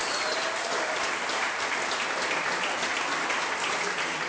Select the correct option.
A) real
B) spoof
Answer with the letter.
A